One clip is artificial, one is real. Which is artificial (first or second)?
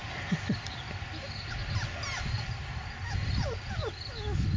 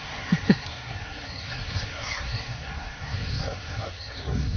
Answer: second